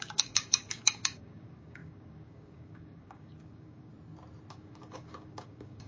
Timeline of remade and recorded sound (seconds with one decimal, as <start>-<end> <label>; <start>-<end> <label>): 0.0-3.9 remade; 3.9-4.5 recorded; 4.5-5.9 remade